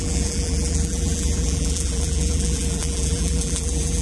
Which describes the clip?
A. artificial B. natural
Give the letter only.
A